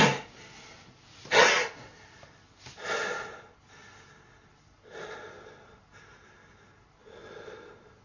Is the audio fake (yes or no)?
no